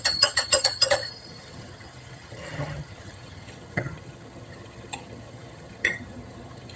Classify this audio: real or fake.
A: fake